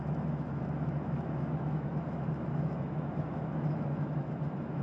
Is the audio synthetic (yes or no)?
yes